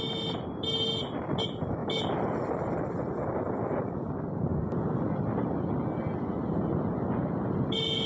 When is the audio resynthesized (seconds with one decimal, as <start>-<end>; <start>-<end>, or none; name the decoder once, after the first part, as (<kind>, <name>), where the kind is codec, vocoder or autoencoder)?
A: none